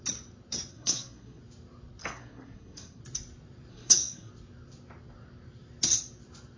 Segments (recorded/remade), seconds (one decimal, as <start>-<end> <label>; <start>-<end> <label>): 0.0-0.7 recorded; 0.7-1.4 remade; 1.4-2.0 recorded; 2.0-3.0 remade; 3.0-3.7 recorded; 3.7-4.3 remade; 4.3-6.6 recorded